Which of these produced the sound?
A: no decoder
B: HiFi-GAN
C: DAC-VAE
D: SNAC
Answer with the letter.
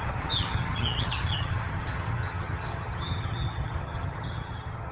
B